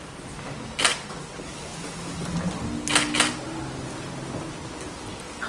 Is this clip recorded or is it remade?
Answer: recorded